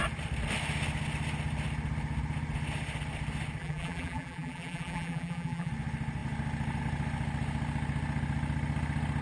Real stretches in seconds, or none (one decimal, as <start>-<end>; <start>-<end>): 0.0-3.6; 5.7-9.2